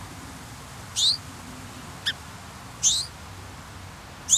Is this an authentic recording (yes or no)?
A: yes